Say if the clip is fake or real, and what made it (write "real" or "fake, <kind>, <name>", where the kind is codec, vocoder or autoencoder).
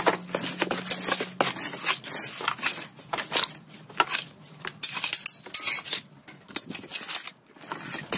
real